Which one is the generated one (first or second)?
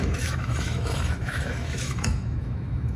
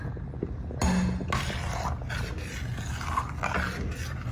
first